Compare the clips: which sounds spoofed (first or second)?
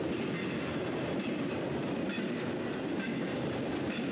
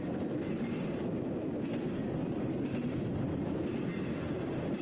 second